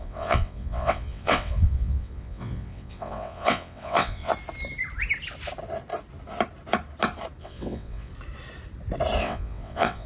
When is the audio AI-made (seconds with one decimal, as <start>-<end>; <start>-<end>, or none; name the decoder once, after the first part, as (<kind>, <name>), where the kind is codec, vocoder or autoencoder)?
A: 0.0-4.3 (vocoder, WaveNeXt); 7.4-8.1; 9.2-10.1